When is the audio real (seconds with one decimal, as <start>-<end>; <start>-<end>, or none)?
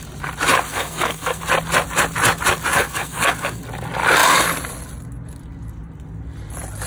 0.0-0.7; 1.4-2.7; 3.6-6.9